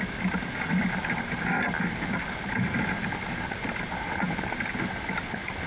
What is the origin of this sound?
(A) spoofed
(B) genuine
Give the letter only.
B